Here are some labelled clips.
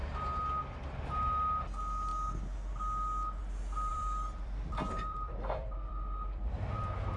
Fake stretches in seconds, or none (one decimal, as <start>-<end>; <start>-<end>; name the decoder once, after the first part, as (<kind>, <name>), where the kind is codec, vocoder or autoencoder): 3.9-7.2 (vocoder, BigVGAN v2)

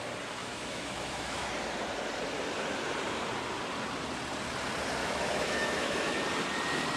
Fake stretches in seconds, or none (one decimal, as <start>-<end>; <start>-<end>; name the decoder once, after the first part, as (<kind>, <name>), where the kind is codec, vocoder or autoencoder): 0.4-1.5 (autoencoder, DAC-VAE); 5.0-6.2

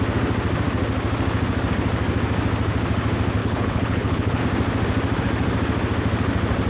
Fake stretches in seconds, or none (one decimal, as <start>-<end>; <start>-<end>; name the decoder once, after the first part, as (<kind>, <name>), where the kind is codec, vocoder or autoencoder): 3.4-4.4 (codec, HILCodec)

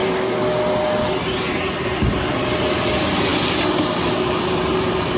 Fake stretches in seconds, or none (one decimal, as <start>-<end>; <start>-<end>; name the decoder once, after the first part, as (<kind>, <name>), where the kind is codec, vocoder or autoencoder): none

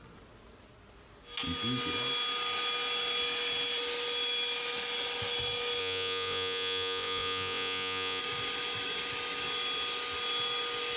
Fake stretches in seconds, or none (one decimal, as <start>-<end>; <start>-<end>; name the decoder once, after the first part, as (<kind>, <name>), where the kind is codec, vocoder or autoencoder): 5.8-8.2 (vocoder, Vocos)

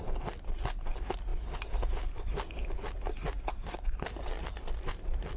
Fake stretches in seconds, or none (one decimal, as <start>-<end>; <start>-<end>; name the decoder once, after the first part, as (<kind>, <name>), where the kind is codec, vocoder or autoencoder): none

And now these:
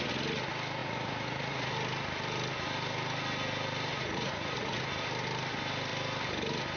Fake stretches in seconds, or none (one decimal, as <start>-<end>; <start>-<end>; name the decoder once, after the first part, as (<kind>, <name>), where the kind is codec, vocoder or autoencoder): 0.8-1.7 (vocoder, Vocos); 3.9-4.8

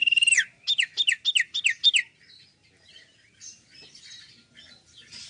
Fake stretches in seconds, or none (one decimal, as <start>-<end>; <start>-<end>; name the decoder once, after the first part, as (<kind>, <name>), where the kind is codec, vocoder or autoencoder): none